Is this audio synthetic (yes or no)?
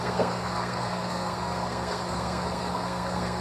yes